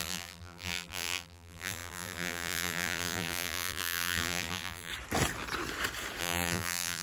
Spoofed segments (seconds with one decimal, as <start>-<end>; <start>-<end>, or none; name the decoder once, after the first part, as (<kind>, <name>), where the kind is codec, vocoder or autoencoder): 0.0-4.9 (vocoder, BigVGAN v2); 6.2-7.0